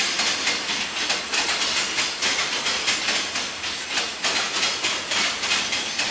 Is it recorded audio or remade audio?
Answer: recorded